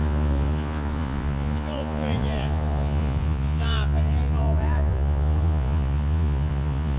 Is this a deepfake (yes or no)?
yes